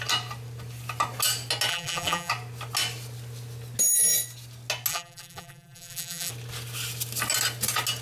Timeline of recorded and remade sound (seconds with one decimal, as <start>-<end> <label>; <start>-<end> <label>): 0.0-1.7 recorded; 1.7-2.3 remade; 2.3-4.9 recorded; 4.9-6.3 remade; 6.3-8.0 recorded